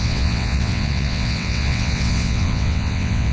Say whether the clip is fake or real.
fake